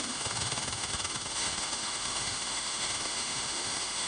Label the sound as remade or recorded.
remade